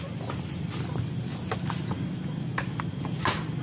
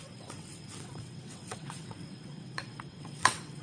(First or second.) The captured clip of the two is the first